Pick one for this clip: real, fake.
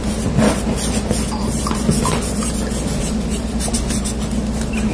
real